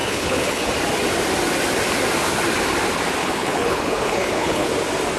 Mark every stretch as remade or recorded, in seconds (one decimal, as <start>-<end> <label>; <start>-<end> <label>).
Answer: 0.0-0.6 remade; 0.6-3.2 recorded; 3.2-4.7 remade; 4.7-5.2 recorded